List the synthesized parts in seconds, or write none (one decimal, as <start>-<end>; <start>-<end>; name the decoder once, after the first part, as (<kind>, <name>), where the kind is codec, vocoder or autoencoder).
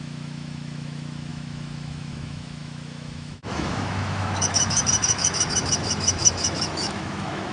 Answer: 0.0-7.5 (autoencoder, DAC-VAE)